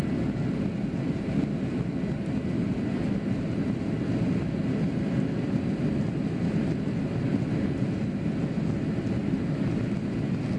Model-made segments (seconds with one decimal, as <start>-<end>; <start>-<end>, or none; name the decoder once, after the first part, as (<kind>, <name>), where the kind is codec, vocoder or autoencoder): none